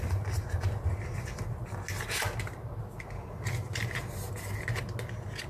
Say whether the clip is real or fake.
real